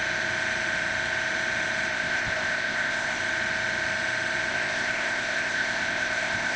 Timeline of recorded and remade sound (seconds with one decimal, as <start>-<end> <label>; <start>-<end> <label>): 0.0-1.9 recorded; 1.9-3.2 remade; 3.2-4.5 recorded; 4.5-6.6 remade